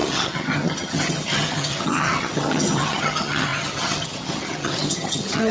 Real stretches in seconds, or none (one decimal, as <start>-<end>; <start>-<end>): none